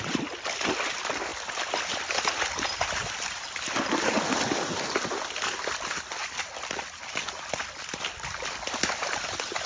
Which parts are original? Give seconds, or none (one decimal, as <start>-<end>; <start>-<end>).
0.0-9.7